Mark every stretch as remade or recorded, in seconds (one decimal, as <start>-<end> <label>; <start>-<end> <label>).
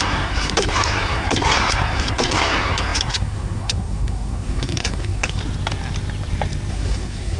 0.0-5.4 remade; 5.4-6.7 recorded; 6.7-7.4 remade